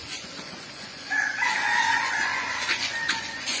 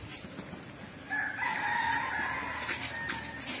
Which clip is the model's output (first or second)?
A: first